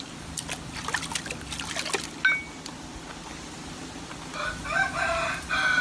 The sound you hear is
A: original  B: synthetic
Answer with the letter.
A